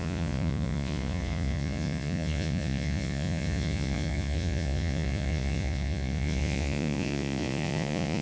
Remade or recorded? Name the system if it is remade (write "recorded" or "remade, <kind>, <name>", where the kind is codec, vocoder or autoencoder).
remade, vocoder, Vocos